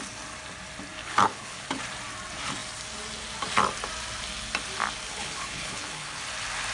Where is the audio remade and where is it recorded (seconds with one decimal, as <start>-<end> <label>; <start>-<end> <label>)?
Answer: 0.0-1.0 recorded; 1.0-1.8 remade; 1.8-5.1 recorded; 5.1-6.2 remade; 6.2-6.7 recorded